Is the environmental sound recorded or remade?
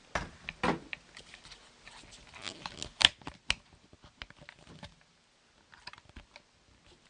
recorded